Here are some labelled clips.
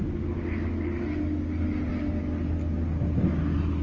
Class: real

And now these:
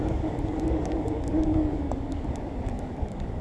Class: fake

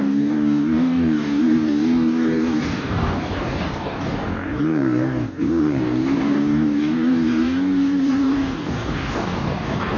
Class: fake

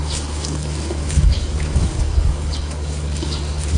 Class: fake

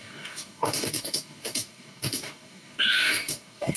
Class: fake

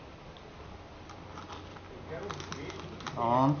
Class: real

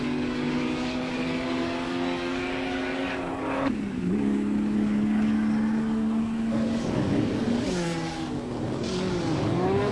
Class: fake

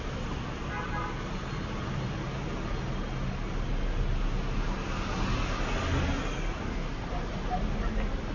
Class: real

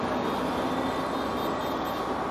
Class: real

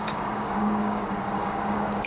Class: fake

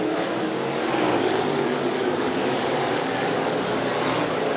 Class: fake